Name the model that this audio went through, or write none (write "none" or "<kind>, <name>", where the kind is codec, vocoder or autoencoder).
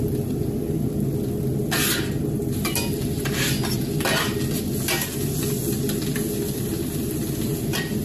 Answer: none